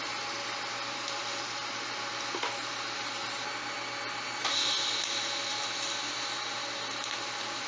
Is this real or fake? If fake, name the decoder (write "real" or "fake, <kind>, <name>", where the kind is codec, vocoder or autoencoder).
real